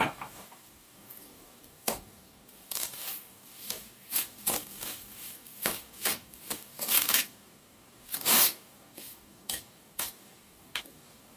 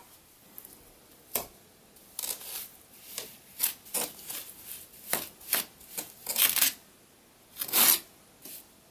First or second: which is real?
second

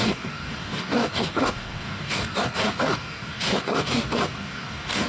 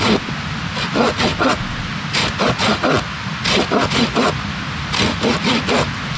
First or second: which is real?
second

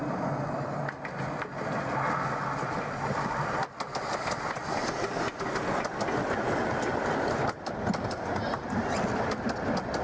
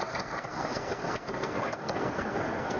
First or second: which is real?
first